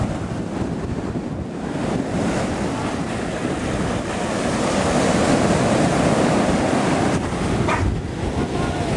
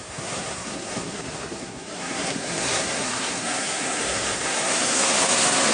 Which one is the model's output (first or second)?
second